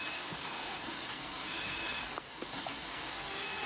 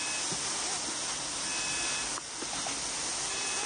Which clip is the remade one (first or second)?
first